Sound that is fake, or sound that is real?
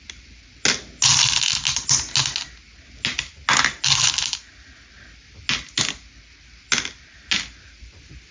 real